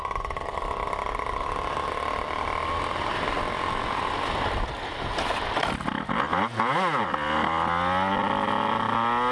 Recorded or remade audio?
recorded